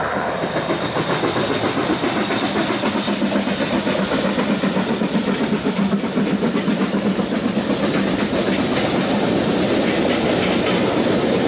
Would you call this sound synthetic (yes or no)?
no